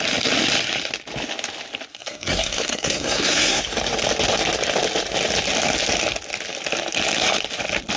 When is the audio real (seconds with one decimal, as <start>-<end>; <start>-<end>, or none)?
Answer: 0.0-1.9; 3.6-8.0